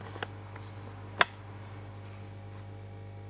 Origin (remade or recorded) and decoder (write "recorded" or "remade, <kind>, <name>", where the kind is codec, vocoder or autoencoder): recorded